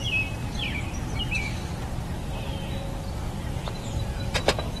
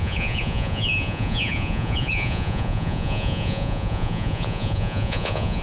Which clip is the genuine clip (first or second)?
first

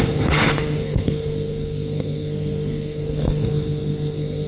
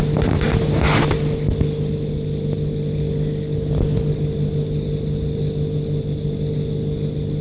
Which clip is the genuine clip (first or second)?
second